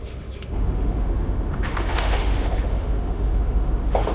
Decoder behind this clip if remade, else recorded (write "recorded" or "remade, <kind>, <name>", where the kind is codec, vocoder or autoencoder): remade, autoencoder, DAC-VAE